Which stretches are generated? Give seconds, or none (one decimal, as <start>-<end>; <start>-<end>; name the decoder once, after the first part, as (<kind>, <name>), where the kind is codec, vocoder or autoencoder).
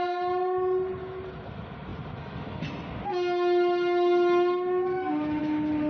none